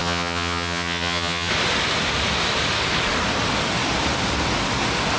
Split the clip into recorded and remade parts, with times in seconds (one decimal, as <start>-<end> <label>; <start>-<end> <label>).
0.0-1.5 remade; 1.5-5.2 recorded